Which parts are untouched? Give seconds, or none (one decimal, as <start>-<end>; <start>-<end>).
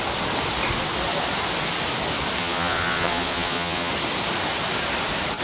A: 0.0-2.4; 3.9-5.4